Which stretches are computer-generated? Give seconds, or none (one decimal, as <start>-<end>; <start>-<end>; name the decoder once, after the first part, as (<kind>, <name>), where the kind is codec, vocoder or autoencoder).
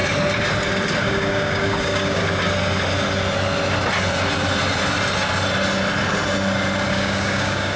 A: 1.0-2.2 (codec, DAC); 6.9-7.8